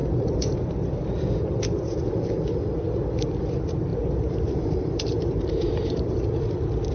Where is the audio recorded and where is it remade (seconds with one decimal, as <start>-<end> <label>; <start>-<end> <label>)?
0.0-0.7 remade; 0.7-3.9 recorded; 3.9-6.4 remade; 6.4-6.9 recorded